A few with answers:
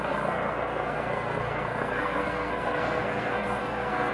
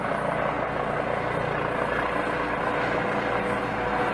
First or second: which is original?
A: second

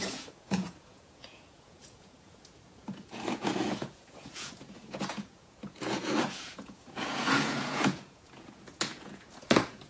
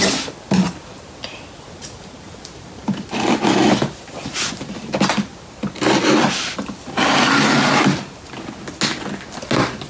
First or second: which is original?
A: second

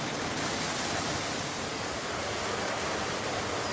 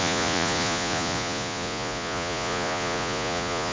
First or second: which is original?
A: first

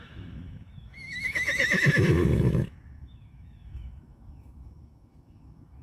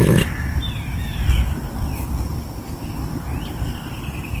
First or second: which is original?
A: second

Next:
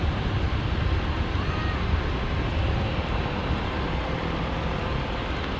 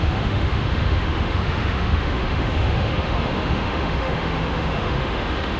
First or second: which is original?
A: first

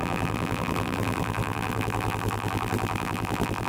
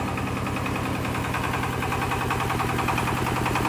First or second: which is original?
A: second